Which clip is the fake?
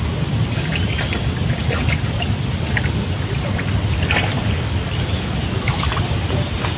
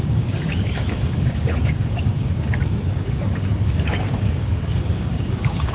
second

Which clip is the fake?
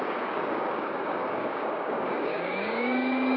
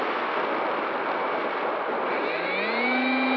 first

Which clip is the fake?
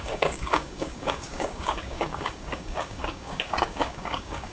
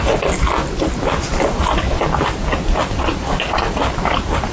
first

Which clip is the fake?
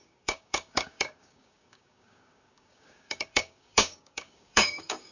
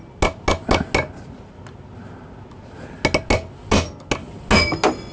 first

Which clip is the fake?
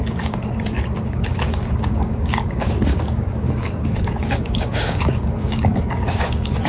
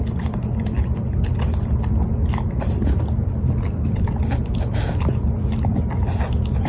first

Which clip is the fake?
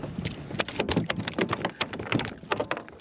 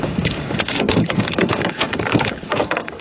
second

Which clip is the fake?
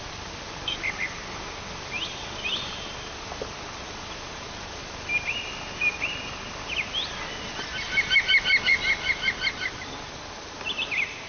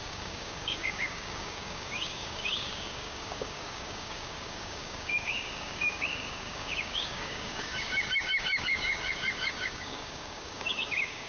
second